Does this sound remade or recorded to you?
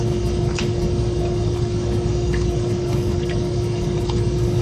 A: remade